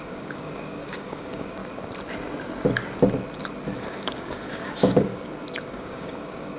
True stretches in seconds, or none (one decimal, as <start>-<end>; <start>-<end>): 1.6-3.8; 5.1-5.7